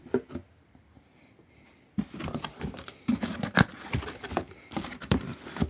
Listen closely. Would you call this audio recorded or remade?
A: remade